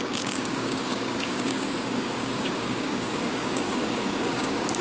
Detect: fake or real fake